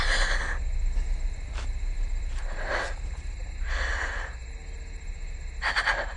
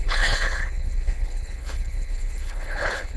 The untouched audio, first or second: first